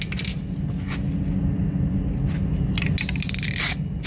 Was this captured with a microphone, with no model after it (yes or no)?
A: yes